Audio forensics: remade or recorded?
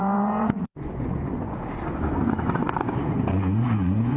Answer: remade